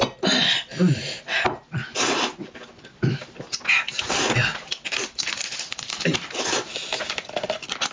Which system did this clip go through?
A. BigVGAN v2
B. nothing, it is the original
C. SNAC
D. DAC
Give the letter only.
B